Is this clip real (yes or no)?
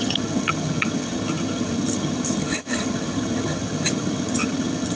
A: no